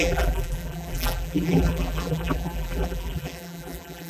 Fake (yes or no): yes